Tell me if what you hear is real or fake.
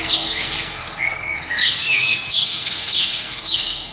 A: fake